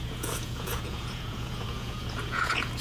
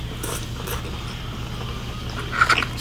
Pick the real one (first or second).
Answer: second